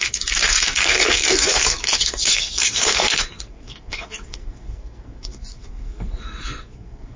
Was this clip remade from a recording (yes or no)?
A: yes